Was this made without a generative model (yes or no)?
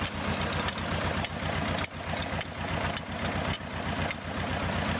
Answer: yes